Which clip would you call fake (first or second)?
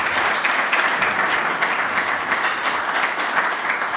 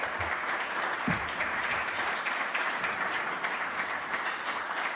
second